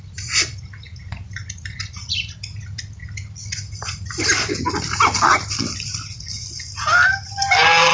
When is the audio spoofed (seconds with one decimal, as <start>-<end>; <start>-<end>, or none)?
none